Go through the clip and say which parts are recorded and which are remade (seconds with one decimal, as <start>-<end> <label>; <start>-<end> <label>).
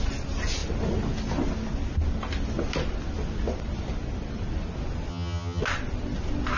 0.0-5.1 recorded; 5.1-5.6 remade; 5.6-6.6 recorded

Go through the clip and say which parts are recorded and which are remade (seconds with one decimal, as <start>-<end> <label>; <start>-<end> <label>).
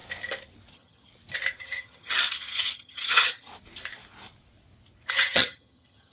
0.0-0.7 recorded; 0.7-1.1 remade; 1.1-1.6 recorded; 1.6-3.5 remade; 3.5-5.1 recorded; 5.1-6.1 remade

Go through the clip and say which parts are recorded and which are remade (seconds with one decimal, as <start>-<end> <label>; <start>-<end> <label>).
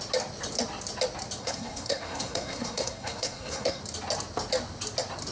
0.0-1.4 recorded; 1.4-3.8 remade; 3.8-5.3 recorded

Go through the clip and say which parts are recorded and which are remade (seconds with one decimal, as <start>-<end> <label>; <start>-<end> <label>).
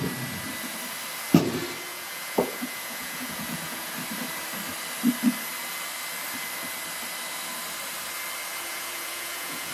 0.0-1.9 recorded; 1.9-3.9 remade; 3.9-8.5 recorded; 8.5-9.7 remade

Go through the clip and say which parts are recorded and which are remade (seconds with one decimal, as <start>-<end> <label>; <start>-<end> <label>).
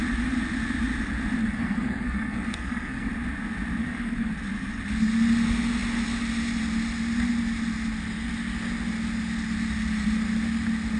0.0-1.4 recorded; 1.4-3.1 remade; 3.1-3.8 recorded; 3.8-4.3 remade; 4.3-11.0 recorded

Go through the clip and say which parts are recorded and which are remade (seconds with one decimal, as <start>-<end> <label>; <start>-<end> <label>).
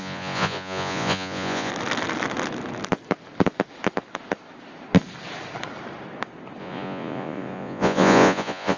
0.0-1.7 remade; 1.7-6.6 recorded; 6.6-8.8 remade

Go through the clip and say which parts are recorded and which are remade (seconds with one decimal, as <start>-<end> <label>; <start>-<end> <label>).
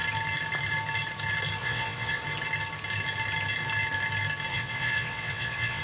0.0-1.6 recorded; 1.6-2.2 remade; 2.2-4.5 recorded; 4.5-5.8 remade